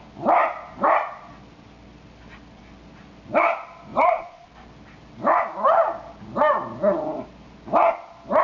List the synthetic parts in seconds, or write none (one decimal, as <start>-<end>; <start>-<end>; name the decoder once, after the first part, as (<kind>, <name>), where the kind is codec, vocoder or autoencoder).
3.9-4.5 (vocoder, Vocos)